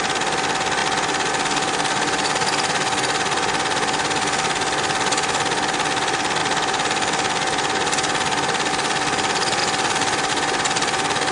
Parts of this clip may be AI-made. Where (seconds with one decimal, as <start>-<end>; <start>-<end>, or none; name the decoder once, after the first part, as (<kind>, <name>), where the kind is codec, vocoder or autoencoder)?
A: 6.4-8.7 (vocoder, BigVGAN v2); 9.6-10.3